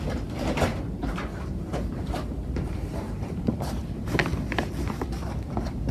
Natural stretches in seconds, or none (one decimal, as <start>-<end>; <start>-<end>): 0.0-0.7; 4.2-5.9